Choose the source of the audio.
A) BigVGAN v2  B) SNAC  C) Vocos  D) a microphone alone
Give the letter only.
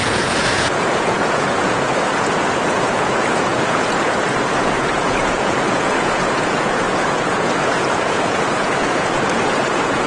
C